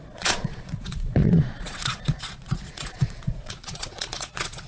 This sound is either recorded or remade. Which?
remade